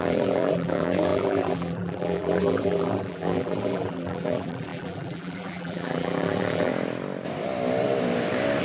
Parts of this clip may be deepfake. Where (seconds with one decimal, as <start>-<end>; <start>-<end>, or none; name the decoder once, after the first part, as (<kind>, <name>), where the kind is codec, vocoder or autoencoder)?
0.0-6.7 (vocoder, BigVGAN v2)

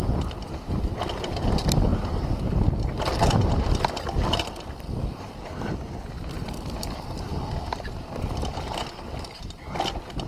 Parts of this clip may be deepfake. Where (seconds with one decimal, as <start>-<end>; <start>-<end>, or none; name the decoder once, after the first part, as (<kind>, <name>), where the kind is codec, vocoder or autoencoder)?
none

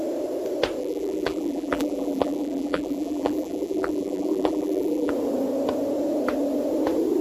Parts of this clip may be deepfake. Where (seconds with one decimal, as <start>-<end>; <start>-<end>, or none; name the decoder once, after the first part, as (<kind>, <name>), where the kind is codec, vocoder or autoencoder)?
0.8-5.1 (vocoder, BigVGAN v2)

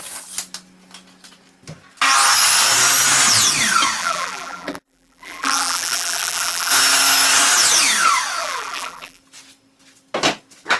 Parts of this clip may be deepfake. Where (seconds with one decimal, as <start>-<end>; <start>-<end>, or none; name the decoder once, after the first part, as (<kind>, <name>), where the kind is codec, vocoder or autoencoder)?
4.0-6.7 (vocoder, BigVGAN v2); 8.4-9.2